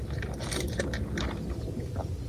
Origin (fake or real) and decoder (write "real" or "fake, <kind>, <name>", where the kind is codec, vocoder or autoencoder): fake, vocoder, BigVGAN v2